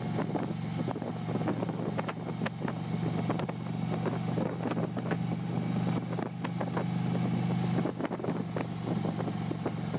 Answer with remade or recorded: recorded